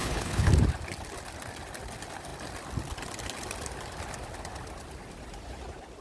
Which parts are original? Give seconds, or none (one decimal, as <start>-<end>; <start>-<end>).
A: 0.5-6.0